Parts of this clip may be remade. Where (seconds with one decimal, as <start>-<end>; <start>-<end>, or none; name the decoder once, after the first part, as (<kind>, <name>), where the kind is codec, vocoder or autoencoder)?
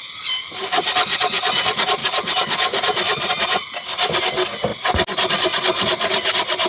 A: none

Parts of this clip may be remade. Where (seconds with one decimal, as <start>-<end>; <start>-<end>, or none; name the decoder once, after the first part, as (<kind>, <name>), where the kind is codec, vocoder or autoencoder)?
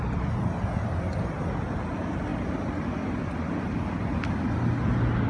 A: none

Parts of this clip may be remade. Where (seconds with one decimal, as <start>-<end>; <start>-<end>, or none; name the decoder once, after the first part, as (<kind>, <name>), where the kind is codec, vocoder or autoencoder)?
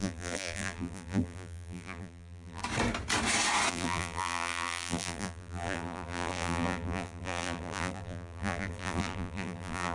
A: 0.0-2.6 (vocoder, BigVGAN v2); 3.7-9.9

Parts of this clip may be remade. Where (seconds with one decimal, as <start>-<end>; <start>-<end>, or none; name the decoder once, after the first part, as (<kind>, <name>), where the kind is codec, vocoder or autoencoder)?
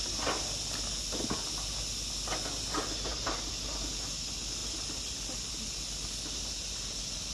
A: 3.1-3.7 (vocoder, BigVGAN v2); 4.6-6.1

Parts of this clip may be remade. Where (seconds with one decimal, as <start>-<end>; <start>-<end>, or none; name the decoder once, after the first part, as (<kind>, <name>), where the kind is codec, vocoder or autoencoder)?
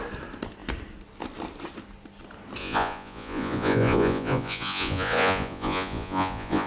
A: 2.6-6.7 (vocoder, Vocos)